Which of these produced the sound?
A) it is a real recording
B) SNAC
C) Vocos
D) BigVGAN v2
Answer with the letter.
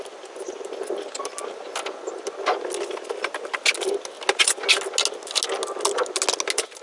A